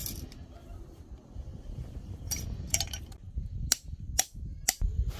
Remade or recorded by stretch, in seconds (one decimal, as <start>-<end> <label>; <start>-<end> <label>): 0.0-1.5 recorded; 1.5-3.7 remade; 3.7-5.2 recorded